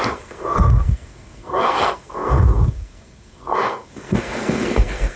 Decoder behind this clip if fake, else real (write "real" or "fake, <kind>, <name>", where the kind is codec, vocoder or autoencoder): fake, codec, SNAC